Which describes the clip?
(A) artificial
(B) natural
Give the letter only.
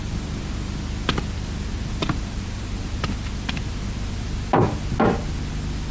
B